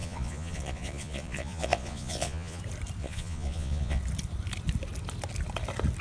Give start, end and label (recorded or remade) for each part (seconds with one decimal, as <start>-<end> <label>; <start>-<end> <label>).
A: 0.0-2.6 remade; 2.6-3.0 recorded; 3.0-4.0 remade; 4.0-6.0 recorded